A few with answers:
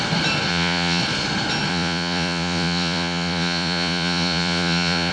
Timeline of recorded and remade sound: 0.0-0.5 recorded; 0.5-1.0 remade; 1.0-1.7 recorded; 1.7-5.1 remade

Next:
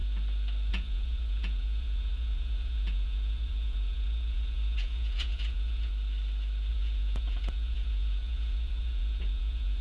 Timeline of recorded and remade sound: 0.0-0.7 recorded; 0.7-5.9 remade; 5.9-6.7 recorded; 6.7-9.8 remade